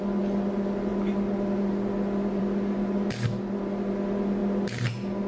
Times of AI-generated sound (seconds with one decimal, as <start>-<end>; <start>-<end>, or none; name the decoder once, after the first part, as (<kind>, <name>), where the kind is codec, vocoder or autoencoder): none